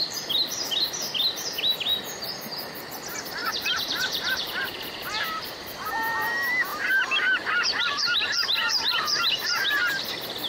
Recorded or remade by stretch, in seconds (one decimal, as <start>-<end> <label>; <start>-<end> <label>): 0.0-3.4 recorded; 3.4-5.9 remade; 5.9-6.7 recorded; 6.7-9.7 remade; 9.7-10.5 recorded